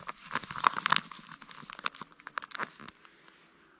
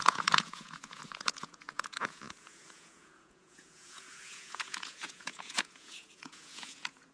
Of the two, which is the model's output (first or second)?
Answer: second